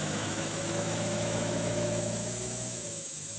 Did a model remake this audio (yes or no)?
yes